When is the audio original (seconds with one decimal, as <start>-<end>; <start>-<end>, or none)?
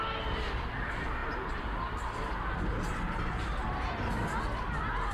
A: 0.0-5.1